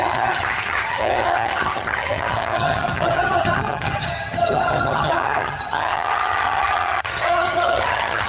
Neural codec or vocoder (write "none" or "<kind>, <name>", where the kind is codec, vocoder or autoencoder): vocoder, HiFi-GAN